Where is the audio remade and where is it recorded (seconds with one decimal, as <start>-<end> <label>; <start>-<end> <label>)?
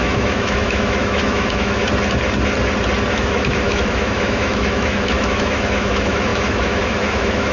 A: 0.0-1.8 remade; 1.8-3.1 recorded; 3.1-7.5 remade